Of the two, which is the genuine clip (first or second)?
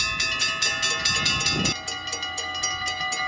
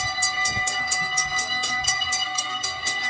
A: first